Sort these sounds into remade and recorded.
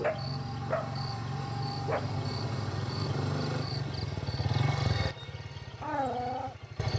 recorded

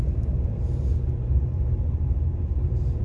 remade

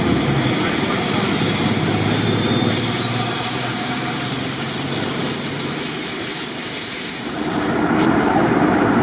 remade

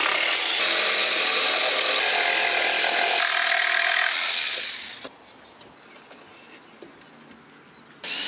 recorded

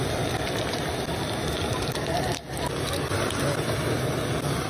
recorded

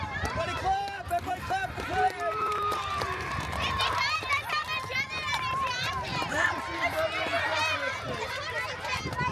remade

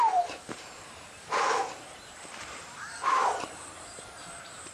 remade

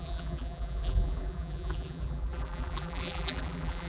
remade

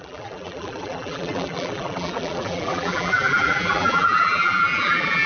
remade